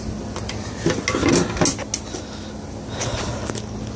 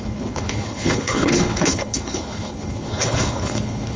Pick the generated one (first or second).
second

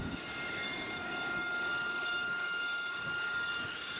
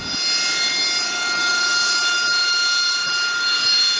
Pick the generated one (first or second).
first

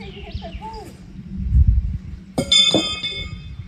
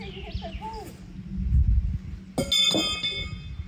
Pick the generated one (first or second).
first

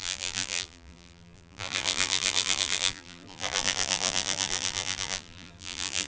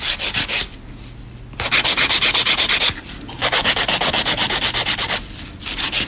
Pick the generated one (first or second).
first